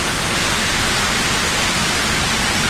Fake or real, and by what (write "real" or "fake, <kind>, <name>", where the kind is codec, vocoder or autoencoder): real